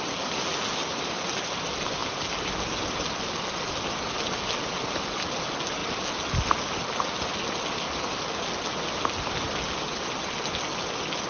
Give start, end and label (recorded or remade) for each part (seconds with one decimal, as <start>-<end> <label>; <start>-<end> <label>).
0.0-11.3 recorded